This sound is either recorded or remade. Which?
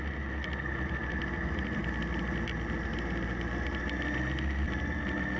recorded